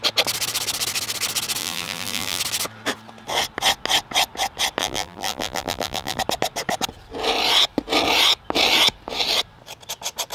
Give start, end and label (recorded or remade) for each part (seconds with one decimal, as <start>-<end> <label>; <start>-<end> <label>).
0.0-1.6 recorded; 1.6-2.4 remade; 2.4-4.8 recorded; 4.8-6.2 remade; 6.2-10.3 recorded